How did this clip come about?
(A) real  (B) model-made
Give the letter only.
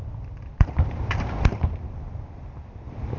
B